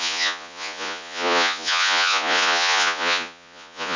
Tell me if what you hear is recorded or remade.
remade